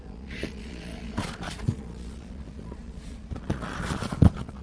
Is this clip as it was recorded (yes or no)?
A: no